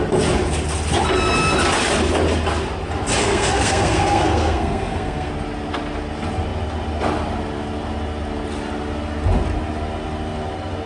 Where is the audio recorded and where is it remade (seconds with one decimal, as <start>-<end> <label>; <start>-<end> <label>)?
0.0-3.2 recorded; 3.2-5.3 remade; 5.3-10.9 recorded